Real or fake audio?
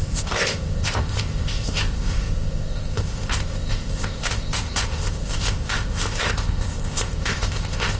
fake